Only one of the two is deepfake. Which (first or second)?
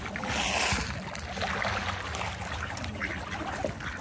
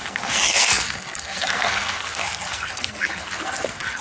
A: second